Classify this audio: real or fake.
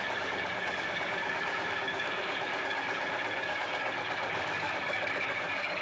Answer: fake